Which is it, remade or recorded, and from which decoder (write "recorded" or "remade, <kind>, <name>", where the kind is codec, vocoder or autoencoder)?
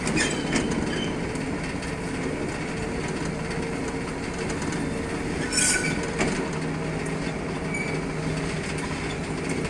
recorded